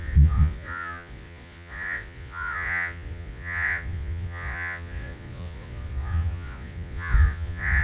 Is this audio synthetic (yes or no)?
yes